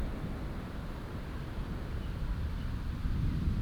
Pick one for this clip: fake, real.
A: fake